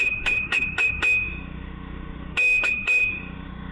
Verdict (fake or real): fake